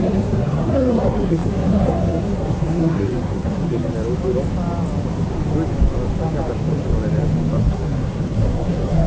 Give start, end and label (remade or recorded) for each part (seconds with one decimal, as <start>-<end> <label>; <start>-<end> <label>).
0.0-3.9 remade; 3.9-7.6 recorded; 7.6-9.1 remade